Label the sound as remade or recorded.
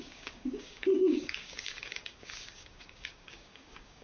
remade